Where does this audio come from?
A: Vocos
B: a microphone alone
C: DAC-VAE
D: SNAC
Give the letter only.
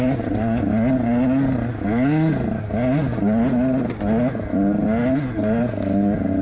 B